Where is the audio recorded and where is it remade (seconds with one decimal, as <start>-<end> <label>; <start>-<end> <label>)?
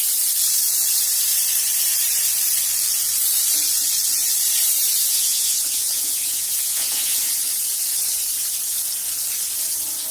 0.0-5.0 recorded; 5.0-7.3 remade; 7.3-10.1 recorded